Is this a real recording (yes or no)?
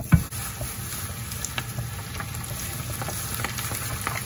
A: yes